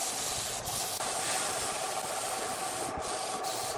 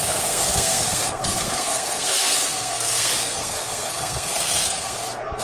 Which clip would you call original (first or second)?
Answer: first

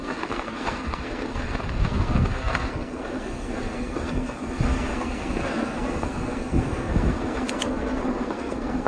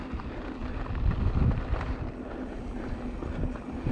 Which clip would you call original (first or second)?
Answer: second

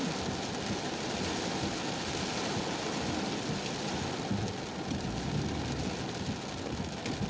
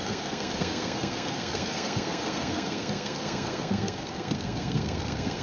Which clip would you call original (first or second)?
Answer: first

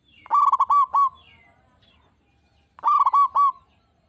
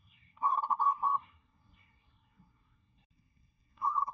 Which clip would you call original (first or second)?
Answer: first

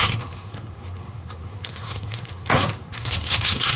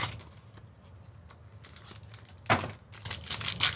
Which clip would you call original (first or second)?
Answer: second